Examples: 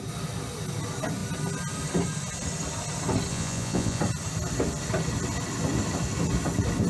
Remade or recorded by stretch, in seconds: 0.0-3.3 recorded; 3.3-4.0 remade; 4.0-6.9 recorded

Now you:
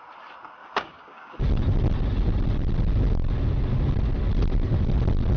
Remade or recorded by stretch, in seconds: 0.0-0.6 recorded; 0.6-1.4 remade; 1.4-5.4 recorded

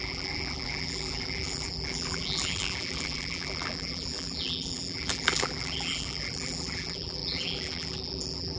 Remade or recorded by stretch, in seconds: 0.0-8.6 remade

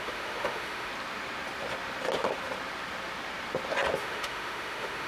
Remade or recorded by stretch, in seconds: 0.0-0.9 remade; 0.9-4.0 recorded; 4.0-5.1 remade

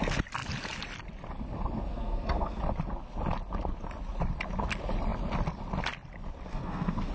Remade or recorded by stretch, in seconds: 0.0-1.9 recorded; 1.9-2.6 remade; 2.6-6.5 recorded; 6.5-7.1 remade